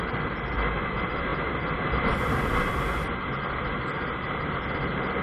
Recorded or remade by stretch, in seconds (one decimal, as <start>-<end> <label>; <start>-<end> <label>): 0.0-5.2 recorded